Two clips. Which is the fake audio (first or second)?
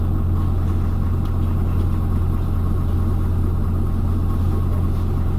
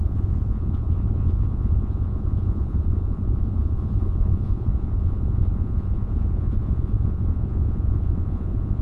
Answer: second